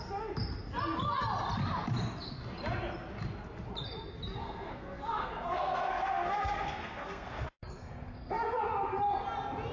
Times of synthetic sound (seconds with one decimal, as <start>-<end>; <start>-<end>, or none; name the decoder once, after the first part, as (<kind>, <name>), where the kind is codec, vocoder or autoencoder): 4.4-8.4 (codec, SNAC)